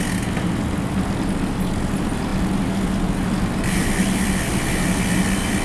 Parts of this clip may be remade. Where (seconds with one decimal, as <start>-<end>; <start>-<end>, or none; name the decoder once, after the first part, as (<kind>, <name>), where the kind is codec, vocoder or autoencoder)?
none